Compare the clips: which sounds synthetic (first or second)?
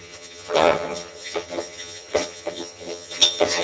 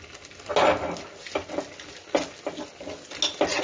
first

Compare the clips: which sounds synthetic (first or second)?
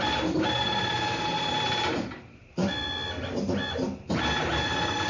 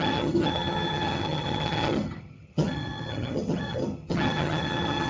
second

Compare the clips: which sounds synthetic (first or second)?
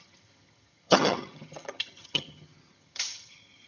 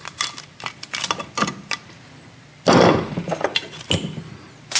first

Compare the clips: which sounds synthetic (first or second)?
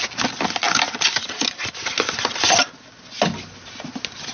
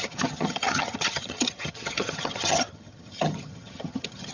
second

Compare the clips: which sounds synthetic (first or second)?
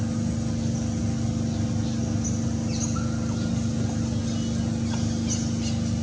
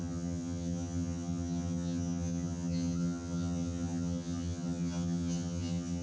second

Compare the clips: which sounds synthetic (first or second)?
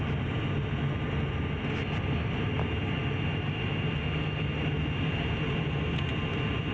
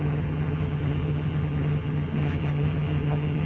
second